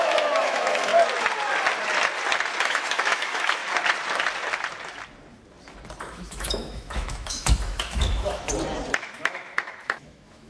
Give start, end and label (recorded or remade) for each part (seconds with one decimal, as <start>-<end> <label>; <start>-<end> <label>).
0.0-0.9 remade; 0.9-2.6 recorded; 2.6-3.6 remade; 3.6-6.0 recorded; 6.0-8.5 remade; 8.5-9.0 recorded; 9.0-10.5 remade